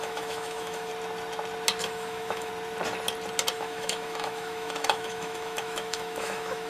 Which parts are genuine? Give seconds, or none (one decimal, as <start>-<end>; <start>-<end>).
0.9-1.8; 2.5-3.5